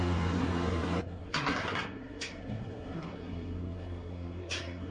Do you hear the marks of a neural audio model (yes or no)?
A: yes